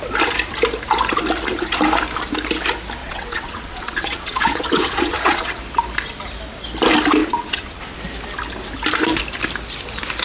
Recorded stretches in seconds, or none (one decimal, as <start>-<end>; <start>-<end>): 0.0-3.0; 5.6-7.2; 7.8-10.2